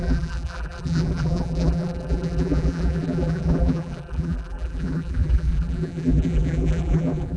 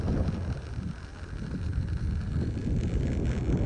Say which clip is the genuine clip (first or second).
second